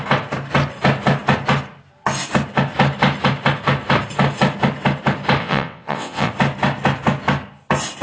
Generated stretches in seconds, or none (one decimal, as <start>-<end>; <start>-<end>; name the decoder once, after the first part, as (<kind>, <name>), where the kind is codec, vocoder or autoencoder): 5.4-6.3 (vocoder, WaveNeXt)